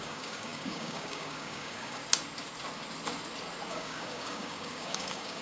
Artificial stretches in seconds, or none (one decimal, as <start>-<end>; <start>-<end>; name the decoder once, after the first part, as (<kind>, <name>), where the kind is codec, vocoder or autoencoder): 0.0-2.0 (codec, DAC); 3.7-5.4